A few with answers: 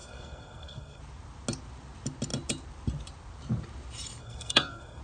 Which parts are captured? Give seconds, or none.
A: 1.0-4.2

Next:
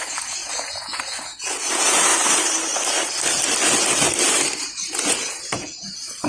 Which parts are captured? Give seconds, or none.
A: 2.1-4.6

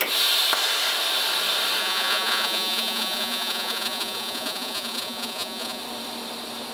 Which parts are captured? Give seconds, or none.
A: 0.0-1.8; 5.8-6.7